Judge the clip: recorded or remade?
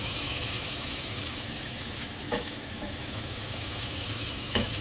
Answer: remade